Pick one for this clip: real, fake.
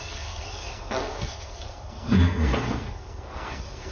fake